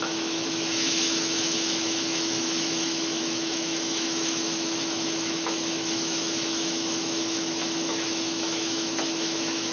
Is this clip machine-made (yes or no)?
yes